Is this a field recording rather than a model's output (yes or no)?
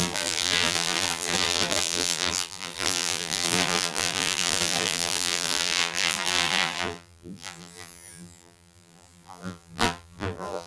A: no